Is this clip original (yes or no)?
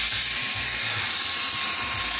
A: no